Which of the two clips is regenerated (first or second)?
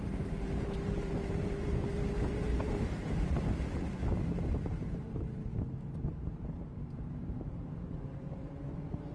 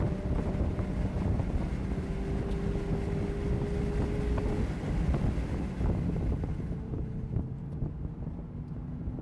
first